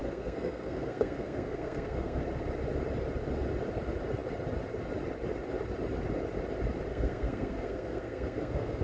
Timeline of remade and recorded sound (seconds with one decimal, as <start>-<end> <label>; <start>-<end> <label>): 0.0-2.4 remade; 2.4-6.9 recorded; 6.9-8.8 remade